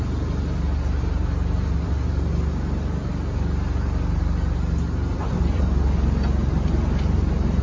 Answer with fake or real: real